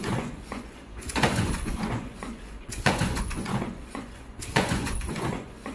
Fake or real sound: fake